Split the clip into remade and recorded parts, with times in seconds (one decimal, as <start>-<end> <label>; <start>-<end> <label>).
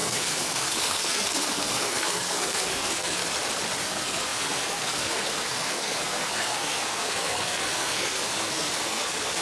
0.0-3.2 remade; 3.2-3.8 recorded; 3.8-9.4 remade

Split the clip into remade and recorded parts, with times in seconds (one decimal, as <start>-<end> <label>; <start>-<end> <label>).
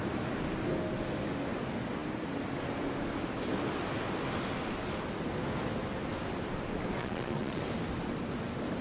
0.0-7.0 recorded; 7.0-7.6 remade; 7.6-8.8 recorded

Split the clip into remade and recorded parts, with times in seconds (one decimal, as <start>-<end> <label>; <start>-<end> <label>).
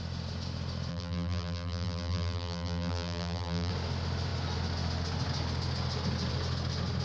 0.0-0.9 recorded; 0.9-3.7 remade; 3.7-7.0 recorded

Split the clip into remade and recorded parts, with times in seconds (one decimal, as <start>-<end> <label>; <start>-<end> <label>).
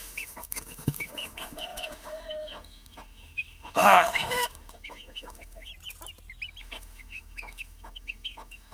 0.0-5.7 remade; 5.7-6.6 recorded; 6.6-8.7 remade